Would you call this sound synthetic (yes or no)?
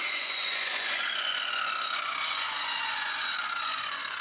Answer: yes